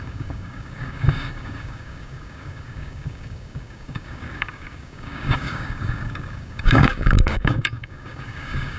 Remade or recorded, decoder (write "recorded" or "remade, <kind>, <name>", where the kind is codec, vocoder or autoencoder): remade, codec, DAC